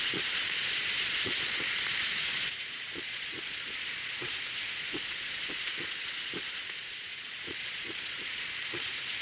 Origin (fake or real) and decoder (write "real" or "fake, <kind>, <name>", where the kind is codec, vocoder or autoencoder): fake, vocoder, Vocos